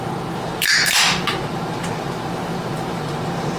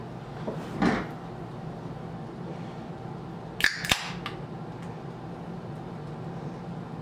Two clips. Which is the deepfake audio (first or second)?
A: first